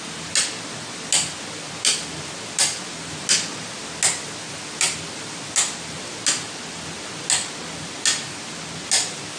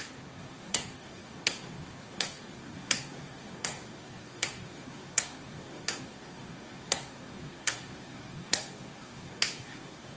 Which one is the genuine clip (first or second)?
first